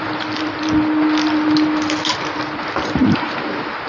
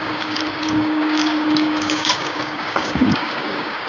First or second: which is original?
first